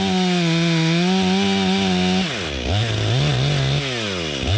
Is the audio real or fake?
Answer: real